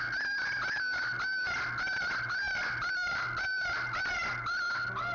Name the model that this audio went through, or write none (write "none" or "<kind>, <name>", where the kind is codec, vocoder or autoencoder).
none